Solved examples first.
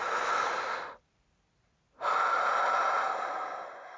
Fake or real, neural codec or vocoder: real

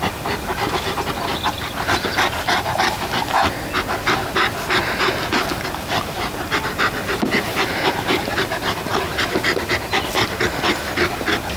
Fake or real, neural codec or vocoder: real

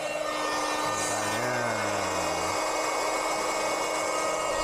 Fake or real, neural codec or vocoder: real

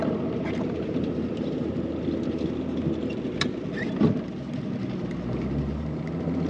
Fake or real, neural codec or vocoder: real